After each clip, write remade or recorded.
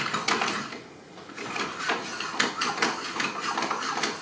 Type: recorded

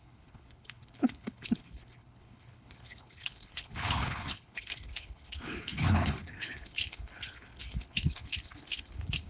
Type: remade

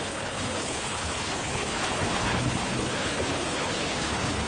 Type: remade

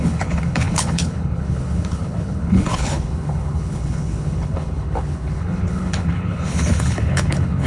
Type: remade